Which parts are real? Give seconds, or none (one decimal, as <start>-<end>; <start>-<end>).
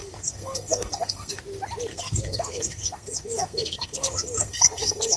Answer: 1.4-1.9